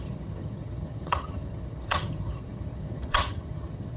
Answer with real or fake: fake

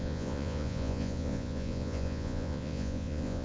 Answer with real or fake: fake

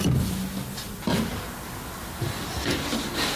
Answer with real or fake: real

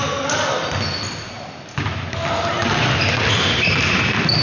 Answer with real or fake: real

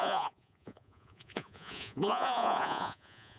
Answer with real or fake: fake